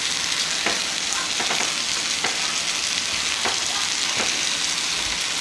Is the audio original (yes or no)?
yes